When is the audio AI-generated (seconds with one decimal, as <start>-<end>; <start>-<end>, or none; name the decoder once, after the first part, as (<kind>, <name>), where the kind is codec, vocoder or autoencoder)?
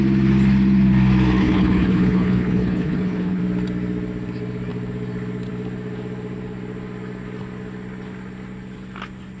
1.4-3.4 (codec, HILCodec)